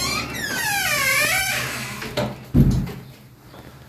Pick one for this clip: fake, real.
real